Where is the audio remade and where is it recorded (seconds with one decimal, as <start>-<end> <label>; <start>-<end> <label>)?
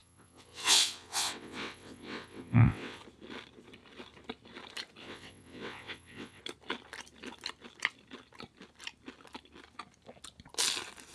0.0-3.0 remade; 3.0-5.0 recorded; 5.0-6.4 remade; 6.4-11.1 recorded